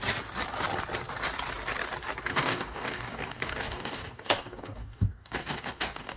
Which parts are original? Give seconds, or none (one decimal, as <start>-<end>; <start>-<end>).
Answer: 0.0-2.3